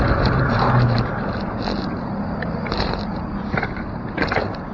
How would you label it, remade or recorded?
remade